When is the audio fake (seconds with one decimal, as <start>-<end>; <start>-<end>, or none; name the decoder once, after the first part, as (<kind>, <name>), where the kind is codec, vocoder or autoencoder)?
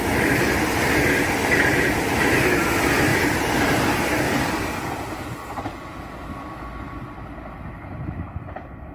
3.1-3.8 (vocoder, BigVGAN v2)